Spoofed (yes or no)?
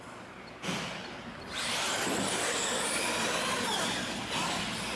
no